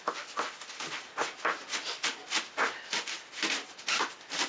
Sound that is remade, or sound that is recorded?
recorded